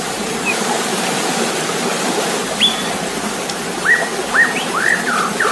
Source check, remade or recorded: recorded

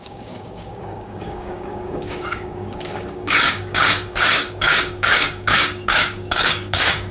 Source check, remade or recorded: remade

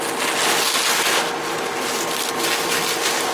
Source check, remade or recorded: recorded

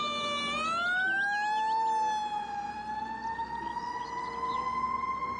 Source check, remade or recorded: recorded